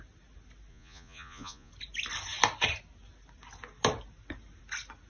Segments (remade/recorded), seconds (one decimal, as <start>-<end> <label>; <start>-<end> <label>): 0.0-0.7 recorded; 0.7-1.7 remade; 1.7-5.1 recorded